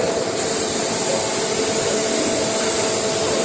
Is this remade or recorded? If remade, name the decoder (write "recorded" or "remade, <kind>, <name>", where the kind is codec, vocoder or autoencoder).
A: remade, vocoder, BigVGAN v2